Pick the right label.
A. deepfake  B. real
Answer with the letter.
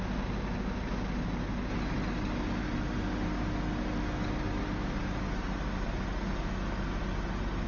B